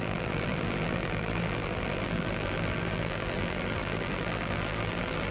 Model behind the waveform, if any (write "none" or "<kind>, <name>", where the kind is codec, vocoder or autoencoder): vocoder, BigVGAN v2